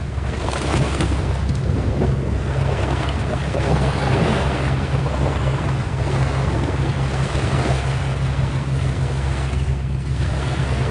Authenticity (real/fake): fake